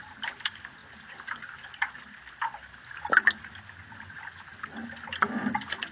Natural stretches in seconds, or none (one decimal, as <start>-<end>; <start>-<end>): 0.0-5.9